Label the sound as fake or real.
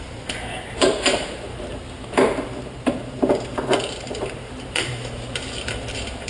fake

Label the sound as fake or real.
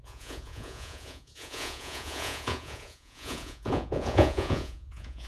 fake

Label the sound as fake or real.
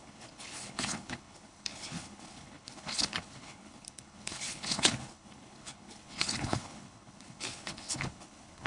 fake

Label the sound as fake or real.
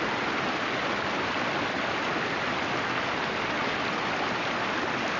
real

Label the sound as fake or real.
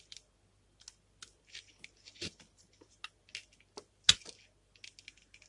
real